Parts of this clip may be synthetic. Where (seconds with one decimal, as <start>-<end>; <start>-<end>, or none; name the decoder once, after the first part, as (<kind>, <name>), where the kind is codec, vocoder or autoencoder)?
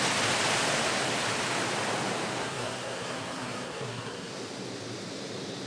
2.4-4.3 (codec, SNAC)